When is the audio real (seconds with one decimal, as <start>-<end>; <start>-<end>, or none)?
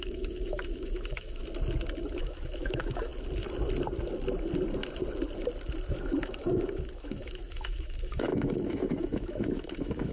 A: 1.4-2.1; 3.1-5.9